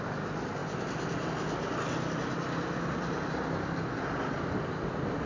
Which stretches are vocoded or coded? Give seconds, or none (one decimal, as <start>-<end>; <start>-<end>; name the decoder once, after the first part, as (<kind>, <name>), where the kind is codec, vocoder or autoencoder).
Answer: none

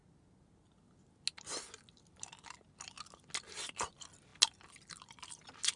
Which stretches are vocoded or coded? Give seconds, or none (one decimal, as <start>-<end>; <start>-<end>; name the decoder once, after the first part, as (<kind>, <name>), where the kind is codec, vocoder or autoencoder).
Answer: none